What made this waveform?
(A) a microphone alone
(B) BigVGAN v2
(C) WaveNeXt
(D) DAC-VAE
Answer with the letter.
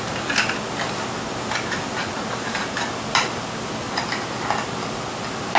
A